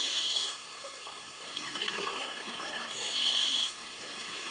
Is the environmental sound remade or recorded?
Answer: remade